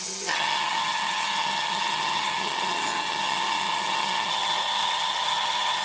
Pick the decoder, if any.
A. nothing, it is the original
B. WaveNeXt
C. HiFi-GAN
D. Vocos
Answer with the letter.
C